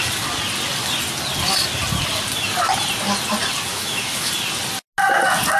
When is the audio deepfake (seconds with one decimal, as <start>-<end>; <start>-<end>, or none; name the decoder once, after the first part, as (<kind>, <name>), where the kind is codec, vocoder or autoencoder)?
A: 3.7-4.3 (autoencoder, DAC-VAE)